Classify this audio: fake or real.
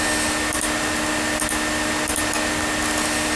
real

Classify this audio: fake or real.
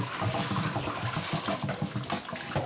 real